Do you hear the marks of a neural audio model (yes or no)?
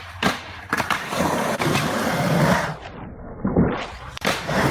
yes